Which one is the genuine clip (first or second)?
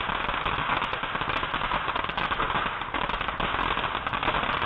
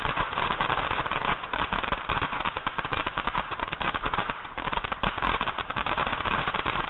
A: first